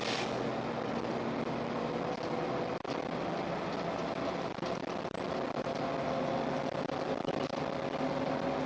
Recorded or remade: recorded